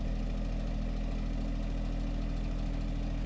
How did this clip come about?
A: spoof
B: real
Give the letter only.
B